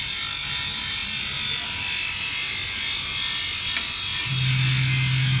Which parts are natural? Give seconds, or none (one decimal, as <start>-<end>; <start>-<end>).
0.0-5.4